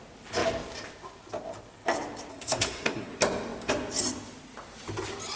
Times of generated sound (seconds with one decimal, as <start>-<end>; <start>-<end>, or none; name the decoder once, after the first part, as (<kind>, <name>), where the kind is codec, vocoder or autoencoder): 2.3-3.1 (codec, SNAC)